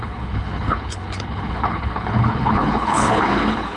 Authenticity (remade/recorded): remade